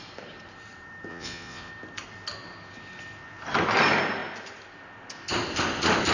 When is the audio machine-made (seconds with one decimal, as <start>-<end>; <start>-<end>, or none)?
1.1-1.7